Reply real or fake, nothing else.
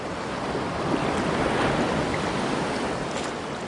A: real